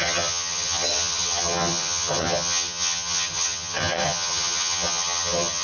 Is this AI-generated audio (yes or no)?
yes